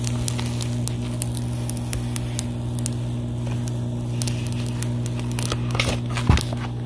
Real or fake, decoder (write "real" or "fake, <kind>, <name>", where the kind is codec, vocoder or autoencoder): real